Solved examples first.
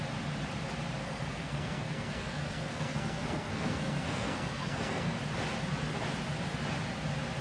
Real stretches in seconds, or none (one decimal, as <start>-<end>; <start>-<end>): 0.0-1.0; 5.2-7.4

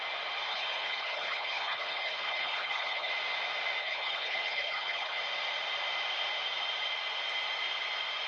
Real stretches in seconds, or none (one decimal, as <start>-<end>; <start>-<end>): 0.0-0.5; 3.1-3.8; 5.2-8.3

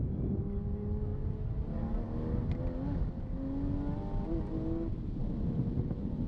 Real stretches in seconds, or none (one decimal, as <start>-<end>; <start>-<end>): 0.0-6.3

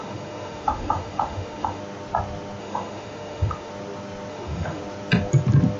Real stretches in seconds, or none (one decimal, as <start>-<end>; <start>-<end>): 1.8-2.6; 3.7-4.3; 4.8-5.8